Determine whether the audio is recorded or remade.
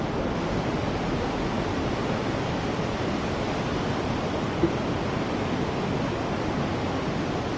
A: recorded